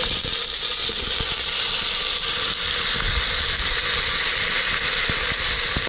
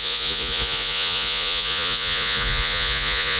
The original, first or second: first